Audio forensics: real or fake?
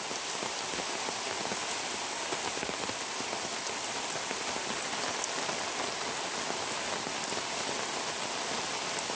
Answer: real